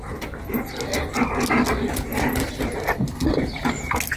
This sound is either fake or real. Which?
real